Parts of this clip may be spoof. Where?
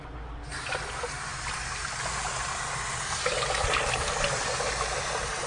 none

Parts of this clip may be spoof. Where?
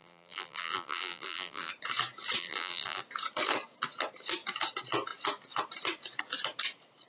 0.0-1.7; 2.4-3.0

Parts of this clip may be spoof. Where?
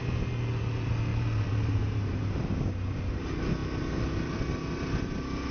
1.1-2.4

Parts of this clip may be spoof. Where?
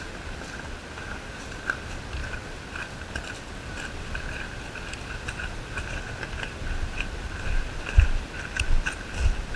none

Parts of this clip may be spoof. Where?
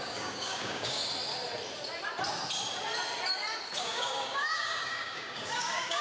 0.0-1.0; 3.8-6.0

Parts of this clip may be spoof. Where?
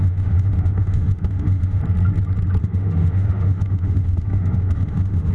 0.0-1.8; 2.6-5.3